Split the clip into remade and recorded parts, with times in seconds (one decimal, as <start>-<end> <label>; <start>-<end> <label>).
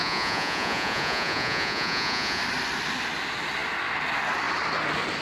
0.0-2.4 remade; 2.4-5.2 recorded